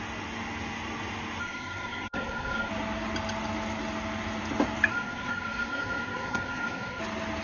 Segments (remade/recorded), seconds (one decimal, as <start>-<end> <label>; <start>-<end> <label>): 0.0-1.4 recorded; 1.4-2.7 remade; 2.7-4.9 recorded; 4.9-7.0 remade; 7.0-7.4 recorded

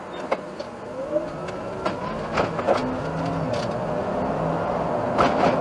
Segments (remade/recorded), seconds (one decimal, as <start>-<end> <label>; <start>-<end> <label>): 0.0-5.6 recorded

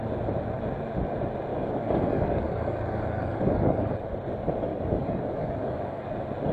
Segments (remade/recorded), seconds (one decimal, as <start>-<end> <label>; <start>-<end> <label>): 0.0-1.5 recorded; 1.5-3.9 remade; 3.9-4.7 recorded; 4.7-6.1 remade; 6.1-6.5 recorded

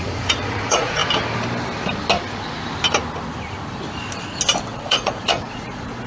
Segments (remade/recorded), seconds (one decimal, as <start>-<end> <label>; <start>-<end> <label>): 0.0-1.0 remade; 1.0-4.7 recorded; 4.7-6.1 remade

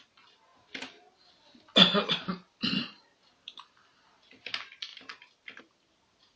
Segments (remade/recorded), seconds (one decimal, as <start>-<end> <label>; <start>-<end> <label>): 0.0-6.4 recorded

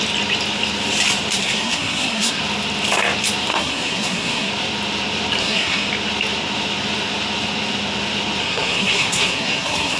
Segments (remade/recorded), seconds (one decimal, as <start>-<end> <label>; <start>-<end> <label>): 0.0-1.4 recorded; 1.4-2.4 remade; 2.4-3.5 recorded; 3.5-4.5 remade; 4.5-5.4 recorded; 5.4-5.9 remade; 5.9-8.4 recorded; 8.4-10.0 remade

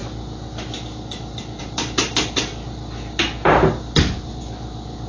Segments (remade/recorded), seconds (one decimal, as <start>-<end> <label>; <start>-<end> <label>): 0.0-5.1 recorded